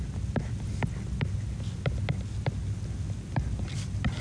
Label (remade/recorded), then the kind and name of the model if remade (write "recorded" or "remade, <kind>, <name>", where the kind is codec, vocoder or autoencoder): recorded